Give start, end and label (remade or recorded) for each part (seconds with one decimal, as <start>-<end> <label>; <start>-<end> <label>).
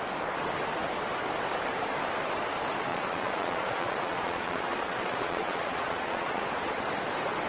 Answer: 0.0-2.9 recorded; 2.9-6.4 remade; 6.4-7.5 recorded